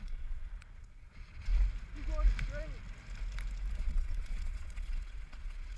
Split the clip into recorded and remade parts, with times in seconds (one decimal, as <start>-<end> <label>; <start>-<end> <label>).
0.0-1.5 remade; 1.5-3.7 recorded; 3.7-5.8 remade